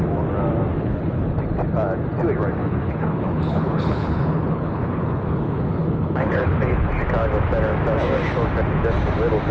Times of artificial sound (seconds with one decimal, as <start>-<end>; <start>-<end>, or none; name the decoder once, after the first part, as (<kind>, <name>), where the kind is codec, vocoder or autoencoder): 0.7-1.3 (codec, HILCodec); 2.6-6.9